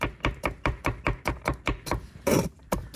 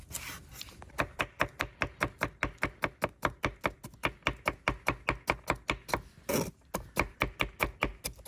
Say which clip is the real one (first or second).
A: second